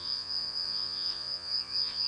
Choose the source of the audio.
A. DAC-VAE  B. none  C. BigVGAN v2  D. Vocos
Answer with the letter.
D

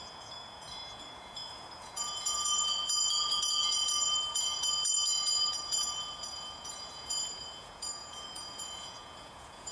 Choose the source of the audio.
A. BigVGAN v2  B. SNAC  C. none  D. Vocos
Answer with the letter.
D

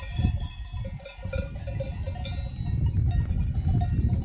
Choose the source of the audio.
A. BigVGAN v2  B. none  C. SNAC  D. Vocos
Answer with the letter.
B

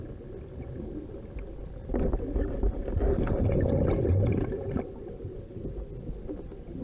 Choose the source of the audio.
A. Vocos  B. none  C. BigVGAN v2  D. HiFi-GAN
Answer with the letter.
B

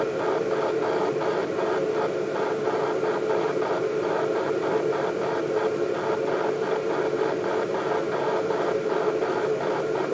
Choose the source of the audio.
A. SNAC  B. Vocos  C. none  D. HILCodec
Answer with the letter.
C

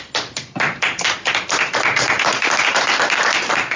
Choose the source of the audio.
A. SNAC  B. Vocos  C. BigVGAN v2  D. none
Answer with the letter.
D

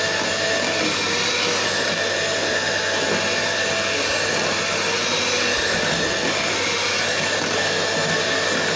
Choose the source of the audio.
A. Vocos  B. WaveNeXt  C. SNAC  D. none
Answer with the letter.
D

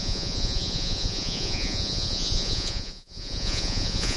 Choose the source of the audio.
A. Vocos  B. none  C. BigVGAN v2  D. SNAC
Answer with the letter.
A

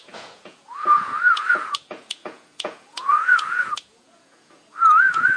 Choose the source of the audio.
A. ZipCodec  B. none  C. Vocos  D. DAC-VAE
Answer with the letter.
C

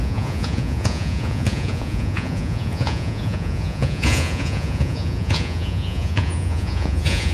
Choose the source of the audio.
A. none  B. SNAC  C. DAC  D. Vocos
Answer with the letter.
D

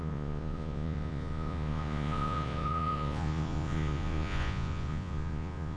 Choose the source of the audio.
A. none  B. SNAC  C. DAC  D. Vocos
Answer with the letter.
D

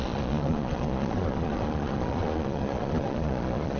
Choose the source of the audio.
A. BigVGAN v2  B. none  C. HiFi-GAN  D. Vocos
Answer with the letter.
D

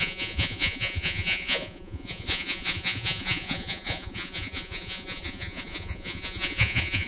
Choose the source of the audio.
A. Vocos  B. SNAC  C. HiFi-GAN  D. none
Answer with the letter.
A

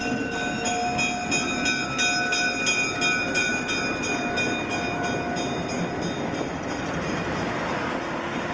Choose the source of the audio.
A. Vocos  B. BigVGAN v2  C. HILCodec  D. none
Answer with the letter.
D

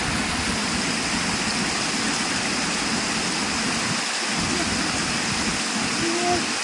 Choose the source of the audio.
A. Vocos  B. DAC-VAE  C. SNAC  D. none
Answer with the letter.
D